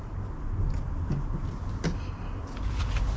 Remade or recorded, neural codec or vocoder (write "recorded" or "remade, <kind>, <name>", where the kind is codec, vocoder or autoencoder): recorded